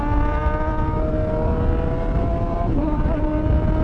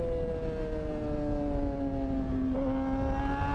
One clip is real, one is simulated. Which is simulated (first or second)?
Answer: first